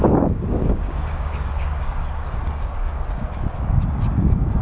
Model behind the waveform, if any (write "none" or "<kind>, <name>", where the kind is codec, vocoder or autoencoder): codec, DAC